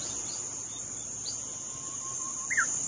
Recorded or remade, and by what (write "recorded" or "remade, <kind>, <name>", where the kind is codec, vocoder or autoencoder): recorded